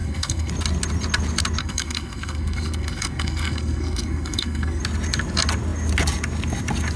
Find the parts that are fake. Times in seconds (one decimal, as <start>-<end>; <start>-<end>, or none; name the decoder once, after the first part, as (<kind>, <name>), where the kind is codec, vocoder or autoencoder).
0.0-0.5 (codec, SNAC); 1.6-4.8